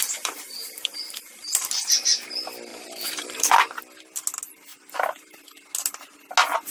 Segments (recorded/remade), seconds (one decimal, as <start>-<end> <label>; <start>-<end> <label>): 0.0-1.9 remade; 1.9-2.7 recorded; 2.7-3.8 remade; 3.8-6.7 recorded